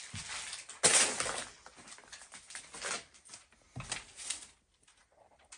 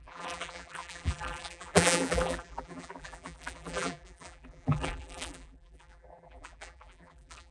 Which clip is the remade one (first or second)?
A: second